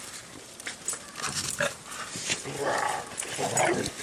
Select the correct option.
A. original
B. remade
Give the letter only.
B